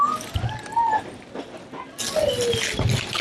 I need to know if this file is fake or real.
real